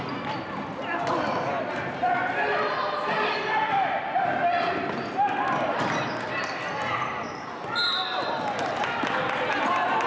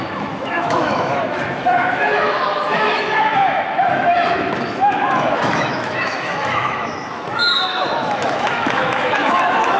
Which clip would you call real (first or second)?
first